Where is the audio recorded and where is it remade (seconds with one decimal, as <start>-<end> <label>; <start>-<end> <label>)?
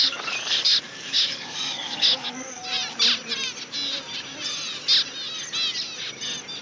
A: 0.0-2.6 remade; 2.6-6.6 recorded